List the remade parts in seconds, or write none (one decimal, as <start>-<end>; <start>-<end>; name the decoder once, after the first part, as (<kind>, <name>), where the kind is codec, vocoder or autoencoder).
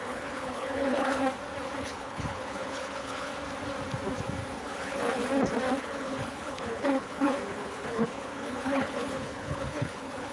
0.0-1.2 (codec, HILCodec); 1.8-3.3; 4.6-5.2; 5.8-10.3